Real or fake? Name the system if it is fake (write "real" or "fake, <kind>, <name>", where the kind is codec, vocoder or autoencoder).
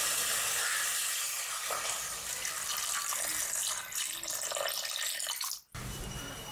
real